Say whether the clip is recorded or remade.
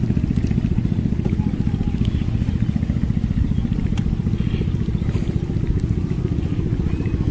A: remade